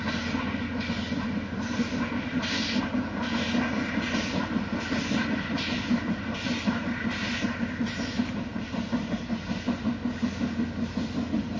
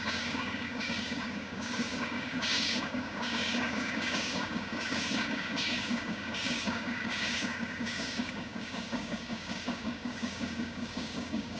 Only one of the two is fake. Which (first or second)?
second